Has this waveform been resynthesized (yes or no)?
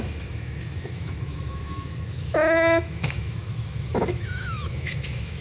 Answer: yes